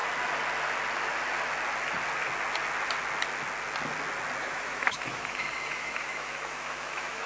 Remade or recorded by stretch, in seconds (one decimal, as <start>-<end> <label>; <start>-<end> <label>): 0.0-4.4 recorded; 4.4-7.3 remade